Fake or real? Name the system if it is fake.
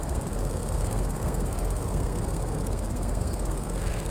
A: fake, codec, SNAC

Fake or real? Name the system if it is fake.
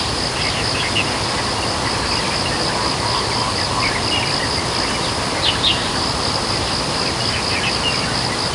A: real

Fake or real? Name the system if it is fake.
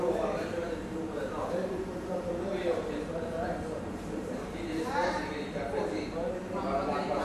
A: fake, vocoder, BigVGAN v2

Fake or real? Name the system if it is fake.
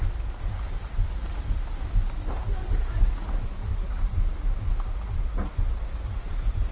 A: real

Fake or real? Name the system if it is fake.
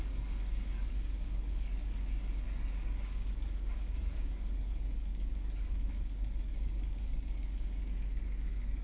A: fake, codec, DAC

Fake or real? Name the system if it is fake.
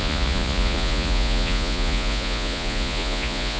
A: fake, vocoder, Vocos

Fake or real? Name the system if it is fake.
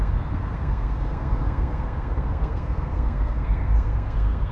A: fake, codec, SNAC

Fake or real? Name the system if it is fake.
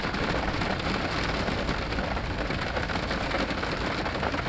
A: real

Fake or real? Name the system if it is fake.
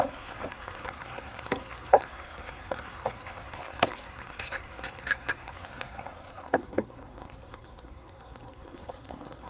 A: fake, codec, SNAC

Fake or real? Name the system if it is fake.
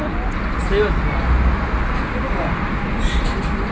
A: real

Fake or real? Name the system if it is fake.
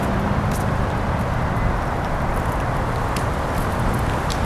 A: real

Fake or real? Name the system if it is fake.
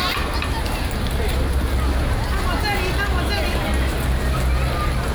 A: real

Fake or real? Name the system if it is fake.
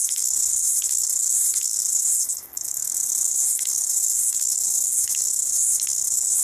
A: fake, codec, SNAC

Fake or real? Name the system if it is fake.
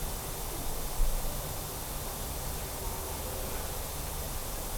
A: real